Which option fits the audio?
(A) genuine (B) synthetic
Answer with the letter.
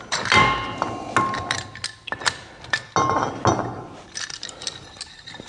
A